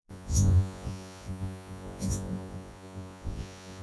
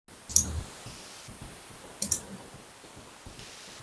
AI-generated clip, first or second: first